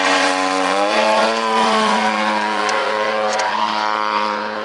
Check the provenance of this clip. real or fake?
fake